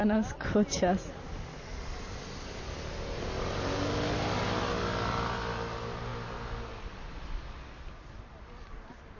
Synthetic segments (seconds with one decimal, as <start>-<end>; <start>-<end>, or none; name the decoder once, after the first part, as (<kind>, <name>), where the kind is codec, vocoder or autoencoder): none